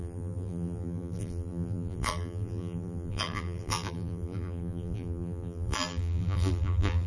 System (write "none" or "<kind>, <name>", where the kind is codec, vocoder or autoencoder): vocoder, BigVGAN v2